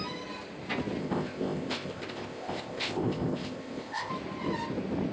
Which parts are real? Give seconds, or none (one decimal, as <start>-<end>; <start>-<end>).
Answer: 0.0-1.0; 4.1-5.1